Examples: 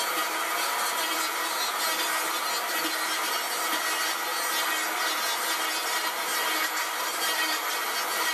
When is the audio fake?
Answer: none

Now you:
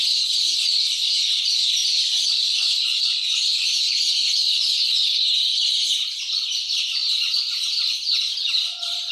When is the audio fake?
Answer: 0.0-1.8 (vocoder, BigVGAN v2); 6.1-7.0; 7.9-9.1

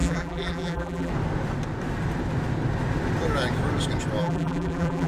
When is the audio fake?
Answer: 0.0-1.1 (vocoder, BigVGAN v2); 4.2-5.1

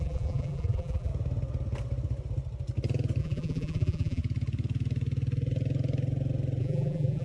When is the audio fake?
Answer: 0.0-1.1 (vocoder, BigVGAN v2); 3.2-4.2; 6.6-7.2

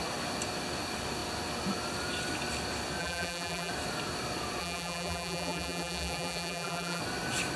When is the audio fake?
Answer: 3.0-3.7 (vocoder, BigVGAN v2); 4.6-7.0